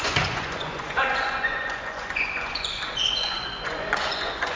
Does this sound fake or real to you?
fake